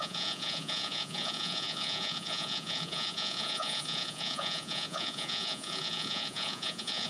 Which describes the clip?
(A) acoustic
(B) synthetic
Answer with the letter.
B